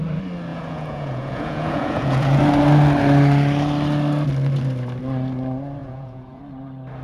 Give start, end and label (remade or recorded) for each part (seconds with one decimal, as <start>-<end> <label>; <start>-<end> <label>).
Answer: 0.0-0.5 recorded; 0.5-2.4 remade; 2.4-5.8 recorded; 5.8-6.4 remade; 6.4-7.0 recorded